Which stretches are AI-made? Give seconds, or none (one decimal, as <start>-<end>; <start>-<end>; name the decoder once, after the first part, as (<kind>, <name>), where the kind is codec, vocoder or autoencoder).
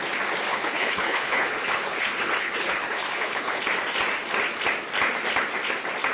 0.5-3.6 (codec, HILCodec)